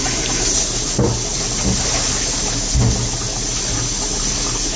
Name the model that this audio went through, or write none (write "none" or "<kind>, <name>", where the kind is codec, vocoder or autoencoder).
none